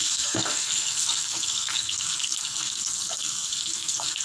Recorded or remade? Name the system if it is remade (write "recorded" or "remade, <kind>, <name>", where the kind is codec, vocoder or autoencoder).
remade, codec, SNAC